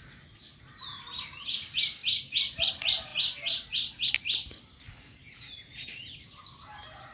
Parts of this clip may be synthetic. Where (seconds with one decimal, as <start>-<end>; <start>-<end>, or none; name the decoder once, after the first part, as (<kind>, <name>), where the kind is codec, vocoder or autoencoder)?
none